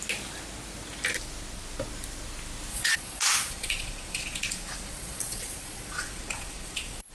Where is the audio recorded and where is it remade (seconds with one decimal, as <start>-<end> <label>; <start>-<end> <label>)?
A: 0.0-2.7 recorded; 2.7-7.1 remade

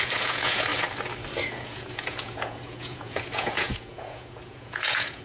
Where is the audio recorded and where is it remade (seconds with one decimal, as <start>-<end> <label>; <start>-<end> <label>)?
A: 0.0-0.7 remade; 0.7-1.5 recorded; 1.5-5.2 remade

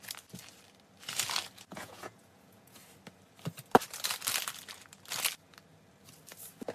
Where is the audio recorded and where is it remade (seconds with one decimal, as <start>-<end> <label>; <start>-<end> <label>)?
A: 0.0-1.7 recorded; 1.7-2.8 remade; 2.8-6.7 recorded